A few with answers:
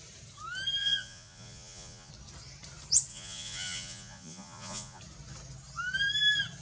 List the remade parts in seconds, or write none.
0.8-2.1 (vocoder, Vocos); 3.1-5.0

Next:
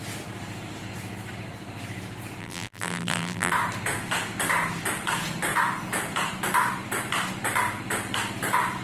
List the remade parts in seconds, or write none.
2.4-3.5 (vocoder, BigVGAN v2)